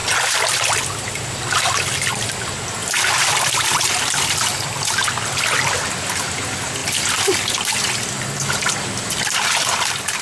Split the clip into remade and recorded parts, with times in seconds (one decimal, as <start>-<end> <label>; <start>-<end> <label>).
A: 0.0-1.5 remade; 1.5-2.8 recorded; 2.8-4.9 remade; 4.9-10.2 recorded